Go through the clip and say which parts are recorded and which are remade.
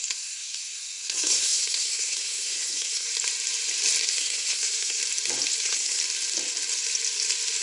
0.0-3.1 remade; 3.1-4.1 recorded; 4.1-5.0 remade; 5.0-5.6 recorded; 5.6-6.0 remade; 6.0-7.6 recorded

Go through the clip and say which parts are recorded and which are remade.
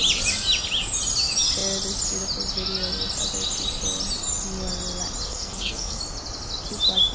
0.0-5.3 recorded; 5.3-6.0 remade; 6.0-7.1 recorded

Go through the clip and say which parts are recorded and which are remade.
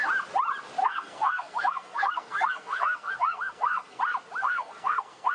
0.0-0.8 recorded; 0.8-4.0 remade; 4.0-4.4 recorded; 4.4-5.3 remade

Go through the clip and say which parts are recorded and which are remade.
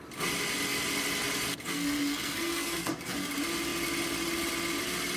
0.0-1.5 recorded; 1.5-3.3 remade; 3.3-5.2 recorded